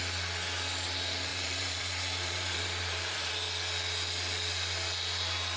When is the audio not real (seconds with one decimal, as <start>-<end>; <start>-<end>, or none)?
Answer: 1.3-3.3